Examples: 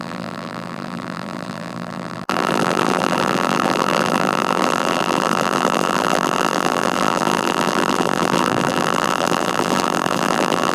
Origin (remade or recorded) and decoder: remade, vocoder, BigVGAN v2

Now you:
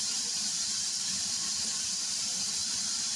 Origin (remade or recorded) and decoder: remade, vocoder, BigVGAN v2